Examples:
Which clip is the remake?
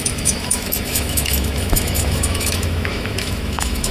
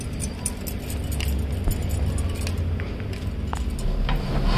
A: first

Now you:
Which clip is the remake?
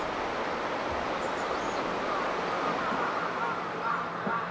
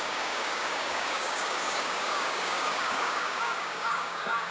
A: second